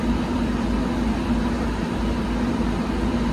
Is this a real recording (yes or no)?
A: no